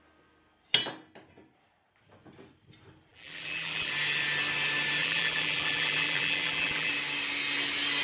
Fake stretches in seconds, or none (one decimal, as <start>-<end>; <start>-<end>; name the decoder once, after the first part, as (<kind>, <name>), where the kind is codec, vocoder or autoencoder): 3.1-3.9 (vocoder, BigVGAN v2); 5.0-6.9